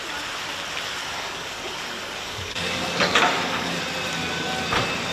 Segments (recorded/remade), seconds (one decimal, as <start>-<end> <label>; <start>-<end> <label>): 0.0-1.0 recorded; 1.0-3.8 remade; 3.8-5.1 recorded